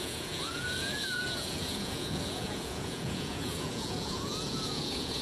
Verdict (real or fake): fake